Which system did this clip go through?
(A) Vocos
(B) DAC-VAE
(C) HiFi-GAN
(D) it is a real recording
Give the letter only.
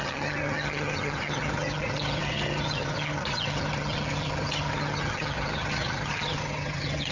C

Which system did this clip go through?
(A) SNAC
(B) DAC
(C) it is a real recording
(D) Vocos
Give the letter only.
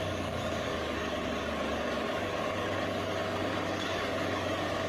B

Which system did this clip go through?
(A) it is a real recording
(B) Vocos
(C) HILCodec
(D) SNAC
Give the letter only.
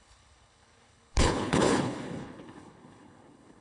C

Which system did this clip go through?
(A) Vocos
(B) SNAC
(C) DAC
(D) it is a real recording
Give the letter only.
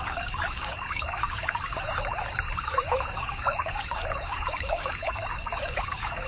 C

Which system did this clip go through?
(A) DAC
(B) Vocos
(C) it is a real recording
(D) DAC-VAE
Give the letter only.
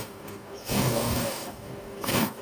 A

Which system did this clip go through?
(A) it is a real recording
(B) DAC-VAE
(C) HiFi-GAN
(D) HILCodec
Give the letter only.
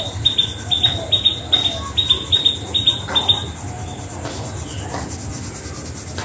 A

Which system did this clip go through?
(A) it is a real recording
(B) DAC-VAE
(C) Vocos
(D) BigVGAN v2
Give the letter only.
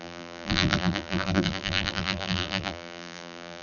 D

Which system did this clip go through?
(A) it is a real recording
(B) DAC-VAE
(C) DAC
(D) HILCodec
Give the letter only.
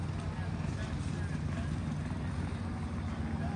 A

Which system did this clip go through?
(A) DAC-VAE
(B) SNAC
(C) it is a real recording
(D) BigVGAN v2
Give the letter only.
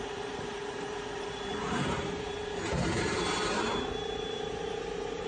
D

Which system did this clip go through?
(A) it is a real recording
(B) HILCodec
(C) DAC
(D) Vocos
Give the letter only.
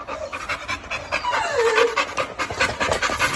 A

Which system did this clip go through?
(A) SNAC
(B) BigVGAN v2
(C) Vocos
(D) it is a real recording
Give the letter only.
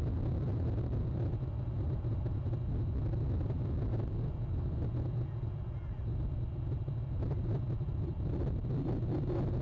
D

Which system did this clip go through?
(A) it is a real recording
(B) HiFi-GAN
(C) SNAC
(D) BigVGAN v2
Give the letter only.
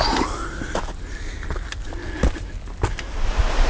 A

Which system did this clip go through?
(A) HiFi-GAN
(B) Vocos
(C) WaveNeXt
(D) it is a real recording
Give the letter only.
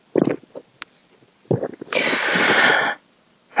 D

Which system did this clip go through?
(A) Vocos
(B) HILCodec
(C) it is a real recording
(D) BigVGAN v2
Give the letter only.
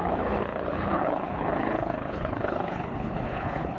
B